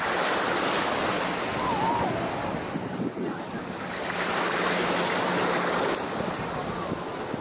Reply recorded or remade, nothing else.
recorded